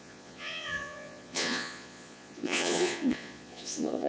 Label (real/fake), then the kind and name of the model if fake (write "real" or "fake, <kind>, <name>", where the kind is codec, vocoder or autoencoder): fake, vocoder, Vocos